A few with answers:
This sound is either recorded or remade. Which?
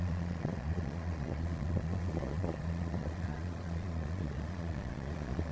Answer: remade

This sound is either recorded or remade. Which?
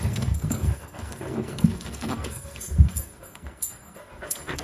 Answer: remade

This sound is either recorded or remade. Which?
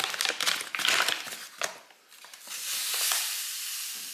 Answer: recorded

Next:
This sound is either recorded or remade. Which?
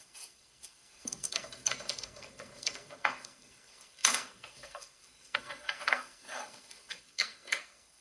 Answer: remade